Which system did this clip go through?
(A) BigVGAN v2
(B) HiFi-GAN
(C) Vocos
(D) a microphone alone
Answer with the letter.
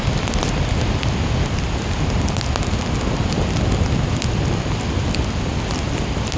D